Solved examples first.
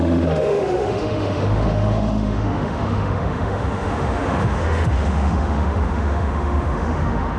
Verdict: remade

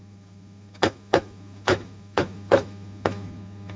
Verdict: remade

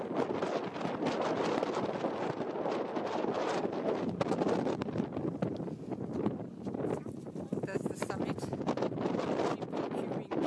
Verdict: recorded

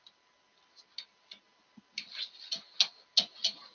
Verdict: recorded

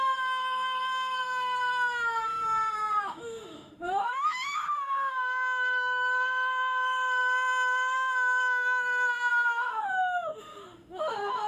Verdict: remade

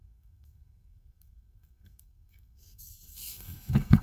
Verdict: remade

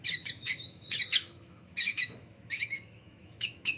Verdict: remade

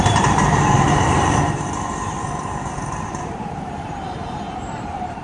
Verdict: remade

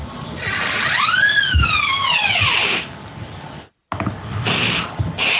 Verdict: recorded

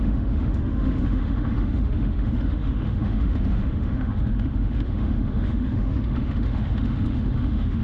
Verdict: remade